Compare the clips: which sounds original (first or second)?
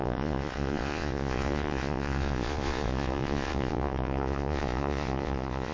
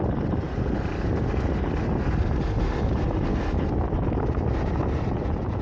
second